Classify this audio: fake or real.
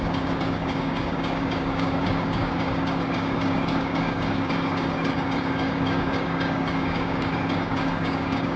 fake